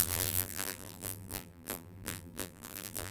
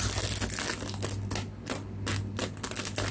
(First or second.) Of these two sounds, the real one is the second